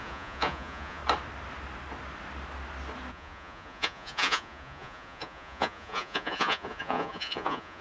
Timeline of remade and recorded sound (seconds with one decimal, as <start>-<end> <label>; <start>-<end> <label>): 0.0-1.0 remade; 1.0-3.1 recorded; 3.1-7.8 remade